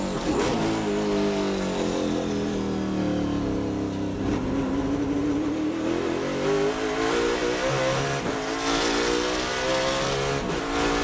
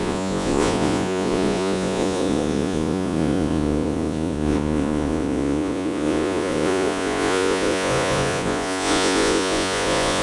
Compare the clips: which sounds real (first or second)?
first